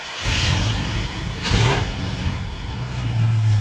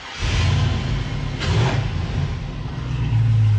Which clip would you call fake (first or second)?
first